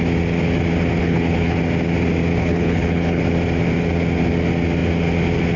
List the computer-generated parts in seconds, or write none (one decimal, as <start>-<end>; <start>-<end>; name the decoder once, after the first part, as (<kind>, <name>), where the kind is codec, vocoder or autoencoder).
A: 1.0-1.6 (codec, HILCodec); 2.4-3.2